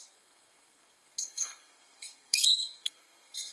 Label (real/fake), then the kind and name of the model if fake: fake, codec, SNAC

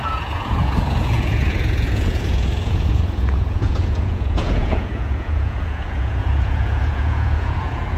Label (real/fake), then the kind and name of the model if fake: fake, vocoder, Vocos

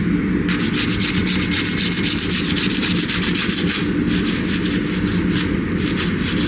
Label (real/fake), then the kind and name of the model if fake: real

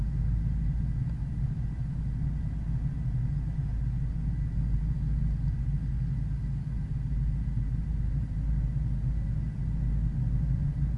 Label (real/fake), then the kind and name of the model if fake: real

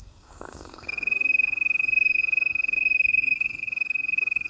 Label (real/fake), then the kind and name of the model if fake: fake, codec, SNAC